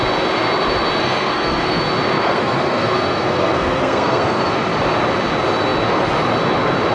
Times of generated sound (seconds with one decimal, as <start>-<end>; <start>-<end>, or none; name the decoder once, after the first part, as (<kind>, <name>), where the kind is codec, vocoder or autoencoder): 1.0-1.8 (codec, SNAC); 2.2-4.4